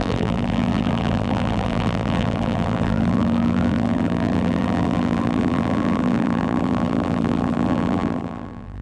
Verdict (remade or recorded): remade